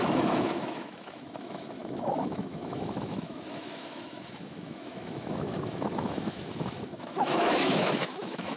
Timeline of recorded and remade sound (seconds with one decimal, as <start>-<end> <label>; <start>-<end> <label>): 0.0-8.6 remade

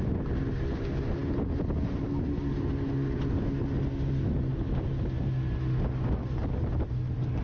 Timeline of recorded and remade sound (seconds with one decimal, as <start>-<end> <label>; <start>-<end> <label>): 0.0-7.4 recorded